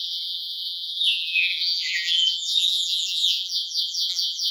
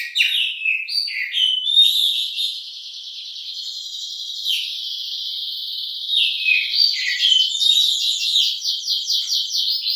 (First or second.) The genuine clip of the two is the second